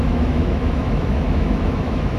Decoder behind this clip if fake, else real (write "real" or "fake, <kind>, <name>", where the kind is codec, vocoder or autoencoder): fake, autoencoder, DAC-VAE